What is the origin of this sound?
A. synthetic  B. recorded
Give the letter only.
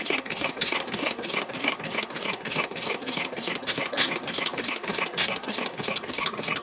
A